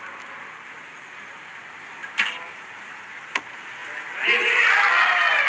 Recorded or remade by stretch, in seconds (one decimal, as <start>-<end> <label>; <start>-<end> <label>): 0.0-5.5 recorded